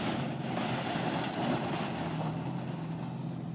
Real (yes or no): yes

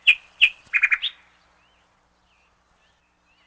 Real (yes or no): yes